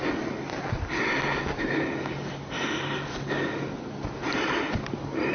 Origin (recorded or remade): recorded